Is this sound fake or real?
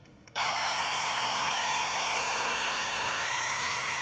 fake